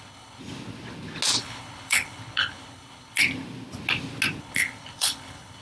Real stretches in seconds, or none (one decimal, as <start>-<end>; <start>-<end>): 0.4-1.4; 3.2-4.4